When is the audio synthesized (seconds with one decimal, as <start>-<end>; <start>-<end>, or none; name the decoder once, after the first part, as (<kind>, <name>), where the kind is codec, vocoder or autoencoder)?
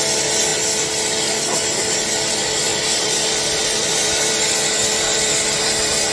2.7-6.1 (vocoder, BigVGAN v2)